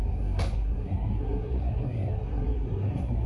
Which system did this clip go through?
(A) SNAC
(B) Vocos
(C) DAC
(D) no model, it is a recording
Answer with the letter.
A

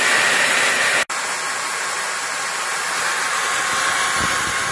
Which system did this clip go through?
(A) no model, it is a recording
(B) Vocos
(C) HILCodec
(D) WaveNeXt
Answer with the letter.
A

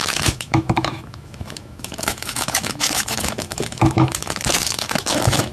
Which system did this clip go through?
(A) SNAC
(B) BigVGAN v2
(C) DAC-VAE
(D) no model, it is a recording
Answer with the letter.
C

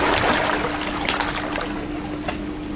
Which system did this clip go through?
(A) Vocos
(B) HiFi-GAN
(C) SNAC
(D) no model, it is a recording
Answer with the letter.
D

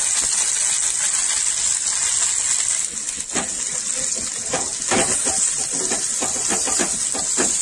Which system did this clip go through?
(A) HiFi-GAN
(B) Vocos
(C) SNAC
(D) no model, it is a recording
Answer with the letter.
D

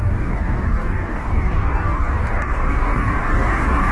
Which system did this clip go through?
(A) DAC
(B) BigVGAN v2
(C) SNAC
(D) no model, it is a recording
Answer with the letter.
A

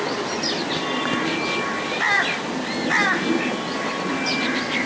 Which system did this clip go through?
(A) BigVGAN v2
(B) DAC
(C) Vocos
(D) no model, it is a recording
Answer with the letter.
D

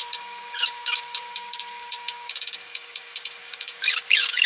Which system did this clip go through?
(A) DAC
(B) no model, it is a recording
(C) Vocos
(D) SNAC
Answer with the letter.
A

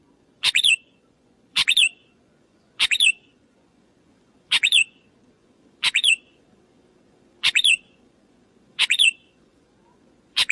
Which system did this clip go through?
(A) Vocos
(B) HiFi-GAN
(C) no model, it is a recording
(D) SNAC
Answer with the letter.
A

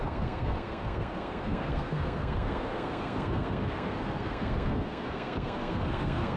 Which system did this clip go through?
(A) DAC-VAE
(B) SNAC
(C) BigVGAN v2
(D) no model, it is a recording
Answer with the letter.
B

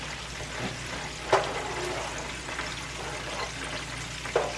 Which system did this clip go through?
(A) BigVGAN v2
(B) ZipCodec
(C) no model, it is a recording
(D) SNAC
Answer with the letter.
C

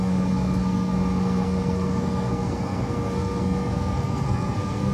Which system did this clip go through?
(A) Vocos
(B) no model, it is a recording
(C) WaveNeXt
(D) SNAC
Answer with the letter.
D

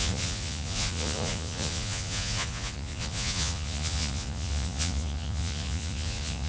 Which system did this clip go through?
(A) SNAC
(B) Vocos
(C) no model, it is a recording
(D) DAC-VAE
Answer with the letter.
B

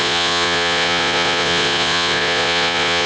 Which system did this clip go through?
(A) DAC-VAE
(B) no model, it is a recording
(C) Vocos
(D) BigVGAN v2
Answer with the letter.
C